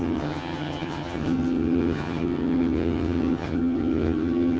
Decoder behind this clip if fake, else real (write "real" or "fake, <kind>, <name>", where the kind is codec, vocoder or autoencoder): fake, vocoder, HiFi-GAN